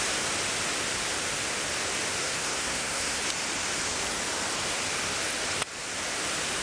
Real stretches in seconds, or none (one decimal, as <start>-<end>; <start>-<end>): 0.0-2.2; 3.2-6.6